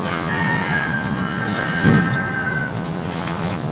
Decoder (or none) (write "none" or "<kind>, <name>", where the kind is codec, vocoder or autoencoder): vocoder, Vocos